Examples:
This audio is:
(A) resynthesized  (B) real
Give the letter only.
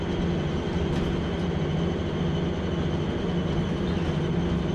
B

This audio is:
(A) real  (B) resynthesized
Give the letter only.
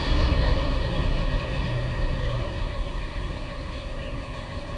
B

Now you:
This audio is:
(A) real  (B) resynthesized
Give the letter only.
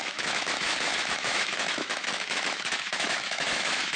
B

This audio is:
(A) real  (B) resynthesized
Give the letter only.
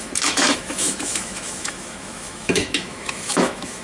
B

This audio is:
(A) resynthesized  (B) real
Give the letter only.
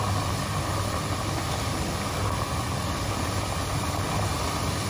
B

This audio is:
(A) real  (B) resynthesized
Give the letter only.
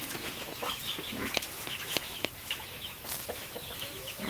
B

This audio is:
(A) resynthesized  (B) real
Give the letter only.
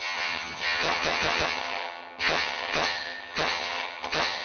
A